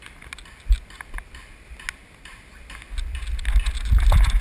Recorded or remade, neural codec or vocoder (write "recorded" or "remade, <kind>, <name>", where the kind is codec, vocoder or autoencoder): recorded